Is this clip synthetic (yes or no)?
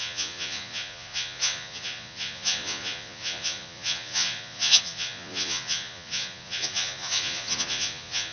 yes